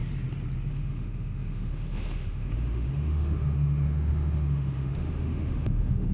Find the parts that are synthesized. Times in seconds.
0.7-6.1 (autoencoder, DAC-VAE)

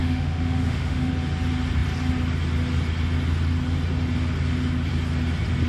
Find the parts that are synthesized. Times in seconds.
0.0-1.1 (autoencoder, DAC-VAE)

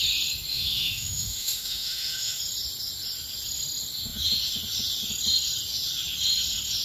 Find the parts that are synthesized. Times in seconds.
0.5-2.4 (autoencoder, DAC-VAE)

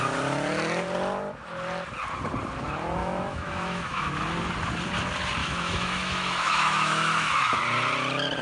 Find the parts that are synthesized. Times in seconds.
3.0-4.1 (autoencoder, DAC-VAE); 5.4-7.6

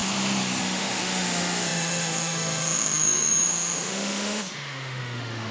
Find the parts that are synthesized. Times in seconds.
0.6-5.5 (autoencoder, DAC-VAE)